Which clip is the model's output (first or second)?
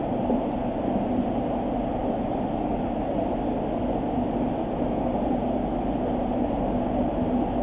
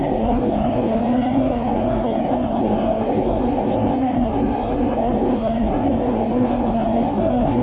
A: second